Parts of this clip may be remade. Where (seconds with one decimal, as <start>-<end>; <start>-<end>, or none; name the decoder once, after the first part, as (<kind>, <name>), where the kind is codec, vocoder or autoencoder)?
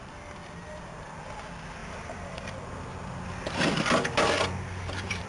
0.4-1.2 (vocoder, BigVGAN v2); 1.8-5.3